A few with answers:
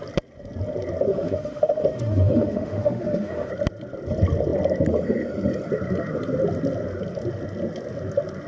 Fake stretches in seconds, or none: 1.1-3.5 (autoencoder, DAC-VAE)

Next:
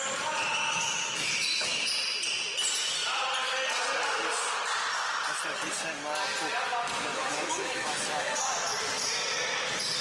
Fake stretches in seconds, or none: 0.5-1.9 (autoencoder, DAC-VAE); 7.1-8.5

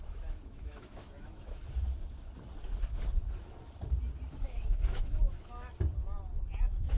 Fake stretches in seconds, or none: 0.0-1.6 (autoencoder, DAC-VAE); 4.3-5.7; 6.6-7.0

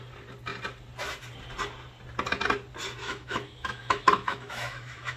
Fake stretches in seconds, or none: 3.0-5.2 (autoencoder, DAC-VAE)

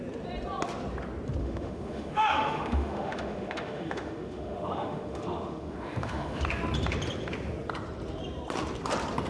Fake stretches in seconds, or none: 1.4-6.4 (autoencoder, DAC-VAE)

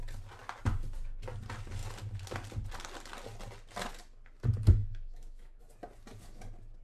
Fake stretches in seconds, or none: 4.8-5.6 (autoencoder, DAC-VAE)